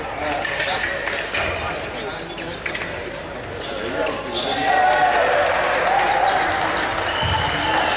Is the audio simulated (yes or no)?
no